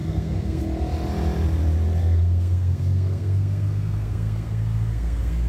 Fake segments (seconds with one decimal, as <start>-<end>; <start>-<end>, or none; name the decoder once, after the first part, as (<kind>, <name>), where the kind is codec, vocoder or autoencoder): 0.0-0.6 (codec, SNAC); 2.0-5.5

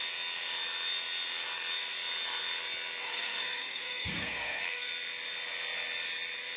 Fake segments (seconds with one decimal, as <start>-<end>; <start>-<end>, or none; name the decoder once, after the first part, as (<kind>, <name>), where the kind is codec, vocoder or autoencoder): 3.0-4.9 (codec, SNAC)

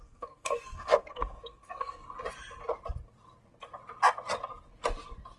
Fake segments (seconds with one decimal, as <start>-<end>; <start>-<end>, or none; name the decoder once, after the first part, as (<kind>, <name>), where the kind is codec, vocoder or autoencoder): 0.0-2.0 (codec, SNAC)

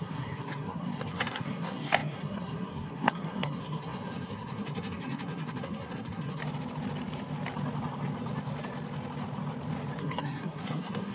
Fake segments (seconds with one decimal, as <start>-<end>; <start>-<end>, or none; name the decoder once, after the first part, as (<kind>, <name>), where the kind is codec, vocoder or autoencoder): 0.0-6.4 (codec, SNAC); 10.0-11.1

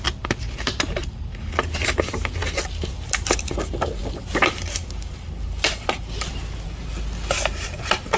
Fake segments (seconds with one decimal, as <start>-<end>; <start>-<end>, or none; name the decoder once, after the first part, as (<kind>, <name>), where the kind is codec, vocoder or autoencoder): none

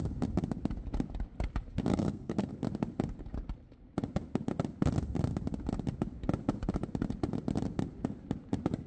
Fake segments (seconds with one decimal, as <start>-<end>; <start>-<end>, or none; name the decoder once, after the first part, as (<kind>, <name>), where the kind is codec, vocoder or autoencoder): 1.9-2.5 (codec, SNAC)

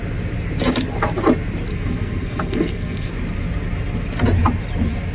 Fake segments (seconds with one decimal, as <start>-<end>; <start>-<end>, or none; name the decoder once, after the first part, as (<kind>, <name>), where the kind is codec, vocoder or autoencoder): 1.7-3.1 (codec, SNAC)